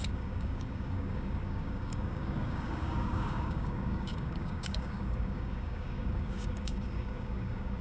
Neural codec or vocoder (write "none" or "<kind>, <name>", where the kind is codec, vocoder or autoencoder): codec, DAC